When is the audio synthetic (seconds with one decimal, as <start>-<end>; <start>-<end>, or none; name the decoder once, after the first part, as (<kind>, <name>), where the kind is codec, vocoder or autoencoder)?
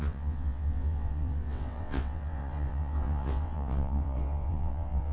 0.0-5.1 (vocoder, WaveNeXt)